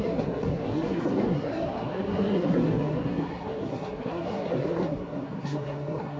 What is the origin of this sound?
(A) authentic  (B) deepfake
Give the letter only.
B